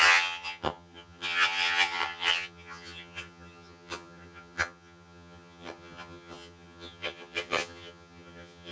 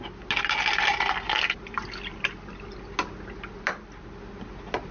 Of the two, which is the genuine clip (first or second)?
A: second